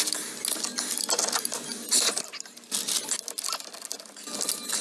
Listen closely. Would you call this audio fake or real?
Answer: real